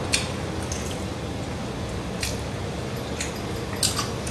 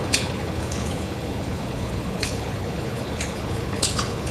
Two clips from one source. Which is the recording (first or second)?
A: first